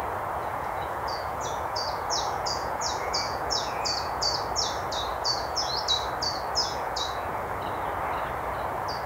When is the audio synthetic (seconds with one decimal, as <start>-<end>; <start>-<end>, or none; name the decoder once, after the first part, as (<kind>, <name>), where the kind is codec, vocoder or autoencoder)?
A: 0.4-4.4 (vocoder, Vocos); 5.1-5.7; 6.6-7.6